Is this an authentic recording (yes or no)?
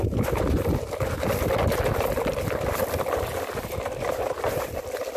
no